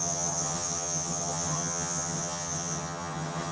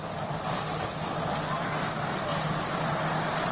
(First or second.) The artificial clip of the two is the first